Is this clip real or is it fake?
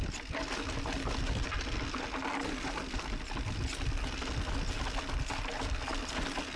real